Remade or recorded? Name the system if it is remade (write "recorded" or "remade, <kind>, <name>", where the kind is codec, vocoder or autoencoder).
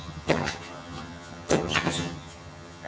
remade, vocoder, HiFi-GAN